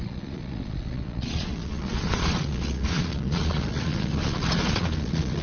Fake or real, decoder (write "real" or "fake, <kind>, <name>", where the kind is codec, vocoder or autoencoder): fake, vocoder, Vocos